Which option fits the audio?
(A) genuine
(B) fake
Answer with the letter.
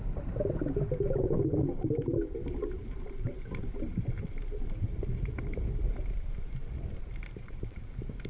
B